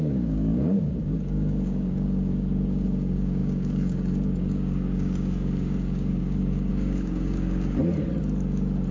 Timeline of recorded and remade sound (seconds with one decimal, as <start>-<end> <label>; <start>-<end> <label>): 0.0-7.8 remade; 7.8-8.9 recorded